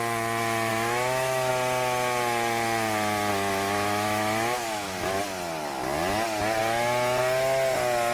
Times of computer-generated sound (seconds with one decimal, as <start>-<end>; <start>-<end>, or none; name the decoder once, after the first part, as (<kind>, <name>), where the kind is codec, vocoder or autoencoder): 0.7-1.5 (autoencoder, DAC-VAE); 3.3-5.2